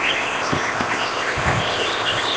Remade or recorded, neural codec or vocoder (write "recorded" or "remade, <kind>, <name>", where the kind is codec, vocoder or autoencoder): remade, codec, ZipCodec